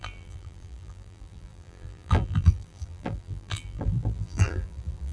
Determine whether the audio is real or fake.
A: fake